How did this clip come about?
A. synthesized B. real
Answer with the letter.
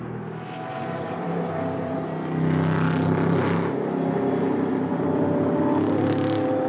B